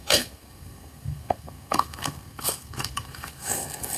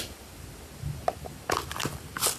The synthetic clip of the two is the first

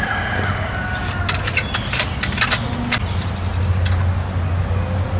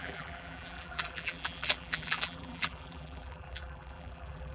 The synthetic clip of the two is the second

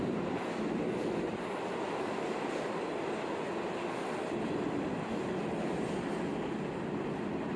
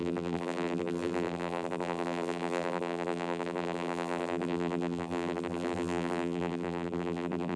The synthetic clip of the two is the second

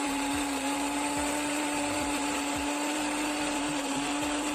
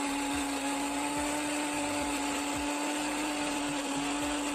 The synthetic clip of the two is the first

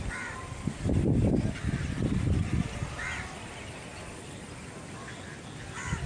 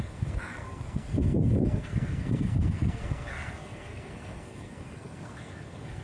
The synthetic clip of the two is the second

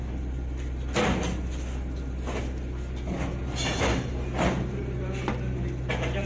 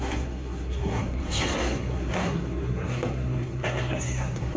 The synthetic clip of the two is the second